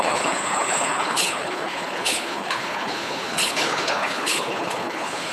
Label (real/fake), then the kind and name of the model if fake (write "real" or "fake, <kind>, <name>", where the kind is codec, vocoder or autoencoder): fake, codec, HILCodec